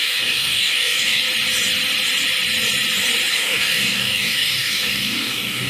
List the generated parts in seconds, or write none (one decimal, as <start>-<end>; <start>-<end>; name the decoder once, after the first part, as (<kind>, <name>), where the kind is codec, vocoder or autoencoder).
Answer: 0.0-1.2 (codec, DAC); 3.3-5.7